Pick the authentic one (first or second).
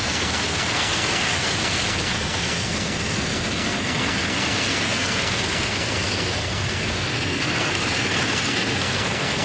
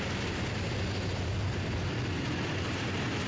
second